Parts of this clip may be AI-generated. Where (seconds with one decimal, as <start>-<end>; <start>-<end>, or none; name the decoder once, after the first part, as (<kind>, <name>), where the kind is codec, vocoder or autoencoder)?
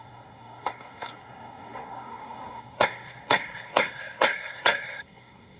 0.0-5.6 (codec, SNAC)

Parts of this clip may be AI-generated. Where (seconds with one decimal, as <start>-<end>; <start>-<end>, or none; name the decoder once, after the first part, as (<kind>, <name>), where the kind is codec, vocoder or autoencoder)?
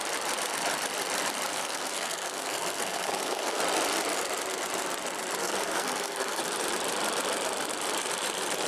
1.5-3.6 (codec, SNAC); 5.4-6.4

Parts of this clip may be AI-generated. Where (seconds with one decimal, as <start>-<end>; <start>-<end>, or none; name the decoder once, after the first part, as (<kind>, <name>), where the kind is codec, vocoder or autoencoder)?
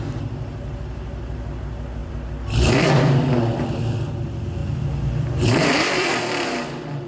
2.0-3.8 (vocoder, BigVGAN v2); 4.6-6.2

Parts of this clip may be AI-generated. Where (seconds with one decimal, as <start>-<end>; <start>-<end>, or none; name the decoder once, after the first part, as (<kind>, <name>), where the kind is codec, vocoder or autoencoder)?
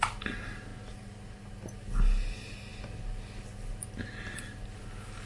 0.7-1.4 (vocoder, BigVGAN v2)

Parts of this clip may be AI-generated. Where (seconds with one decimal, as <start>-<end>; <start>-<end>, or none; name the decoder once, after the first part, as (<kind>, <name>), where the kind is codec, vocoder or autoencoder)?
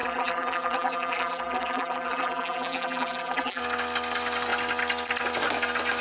0.0-3.6 (vocoder, BigVGAN v2)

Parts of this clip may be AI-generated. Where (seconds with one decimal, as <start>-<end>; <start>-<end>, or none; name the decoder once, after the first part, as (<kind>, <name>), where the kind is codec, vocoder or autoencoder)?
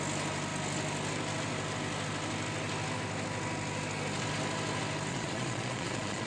5.1-6.3 (vocoder, Vocos)